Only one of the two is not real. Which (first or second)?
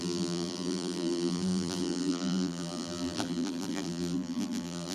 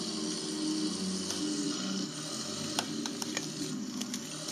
first